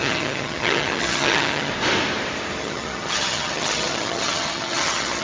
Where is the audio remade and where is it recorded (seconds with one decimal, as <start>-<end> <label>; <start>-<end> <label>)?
0.0-1.7 remade; 1.7-2.6 recorded; 2.6-5.2 remade